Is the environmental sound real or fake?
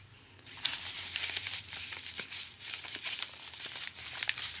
fake